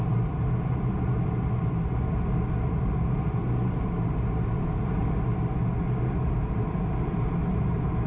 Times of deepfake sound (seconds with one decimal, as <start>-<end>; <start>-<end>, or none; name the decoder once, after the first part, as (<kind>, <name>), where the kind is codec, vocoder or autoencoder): none

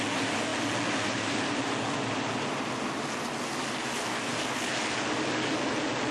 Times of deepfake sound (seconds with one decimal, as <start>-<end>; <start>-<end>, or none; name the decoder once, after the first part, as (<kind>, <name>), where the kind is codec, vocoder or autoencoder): none

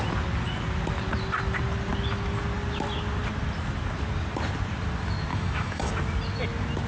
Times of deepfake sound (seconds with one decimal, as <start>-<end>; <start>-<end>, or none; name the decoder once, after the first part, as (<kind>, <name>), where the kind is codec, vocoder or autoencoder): 5.3-5.9 (autoencoder, DAC-VAE)

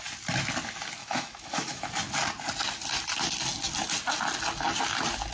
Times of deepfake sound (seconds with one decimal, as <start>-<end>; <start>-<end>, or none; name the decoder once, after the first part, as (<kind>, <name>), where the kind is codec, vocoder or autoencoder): 1.0-1.9 (autoencoder, DAC-VAE)

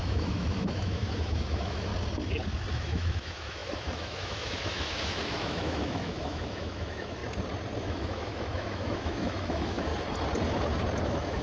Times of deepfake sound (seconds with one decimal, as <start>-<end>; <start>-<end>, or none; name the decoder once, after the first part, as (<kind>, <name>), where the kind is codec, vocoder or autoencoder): 0.0-1.9 (autoencoder, DAC-VAE); 2.7-7.2; 7.8-9.9; 11.0-11.4

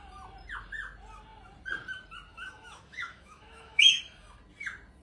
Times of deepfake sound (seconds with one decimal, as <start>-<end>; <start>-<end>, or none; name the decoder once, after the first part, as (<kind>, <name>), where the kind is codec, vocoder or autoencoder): 2.3-4.0 (autoencoder, DAC-VAE)

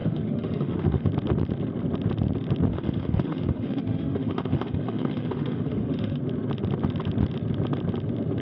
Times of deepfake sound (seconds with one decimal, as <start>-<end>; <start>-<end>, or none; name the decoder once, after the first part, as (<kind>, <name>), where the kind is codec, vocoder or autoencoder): 0.0-1.1 (autoencoder, DAC-VAE); 2.7-6.2